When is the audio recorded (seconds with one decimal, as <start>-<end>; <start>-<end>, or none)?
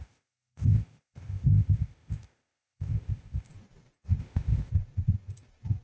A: 3.5-4.2; 4.7-5.8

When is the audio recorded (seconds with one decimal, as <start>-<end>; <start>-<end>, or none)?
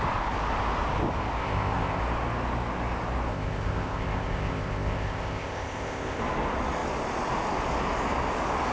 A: 0.0-1.4; 2.0-3.3; 6.2-8.7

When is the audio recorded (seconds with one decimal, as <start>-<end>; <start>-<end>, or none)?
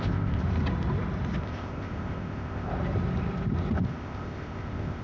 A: 0.4-1.4; 2.7-3.8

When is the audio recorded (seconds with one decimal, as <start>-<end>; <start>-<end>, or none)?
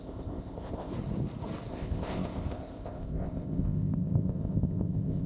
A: 0.9-1.7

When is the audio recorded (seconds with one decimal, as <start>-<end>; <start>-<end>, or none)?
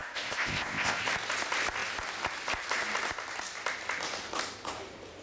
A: 1.0-5.2